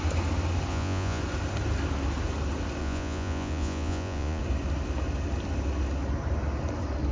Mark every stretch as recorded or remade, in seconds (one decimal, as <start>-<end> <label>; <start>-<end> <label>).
0.0-0.7 recorded; 0.7-1.2 remade; 1.2-2.8 recorded; 2.8-4.4 remade; 4.4-7.1 recorded